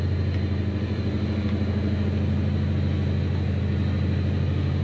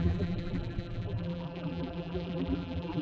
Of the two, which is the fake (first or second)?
second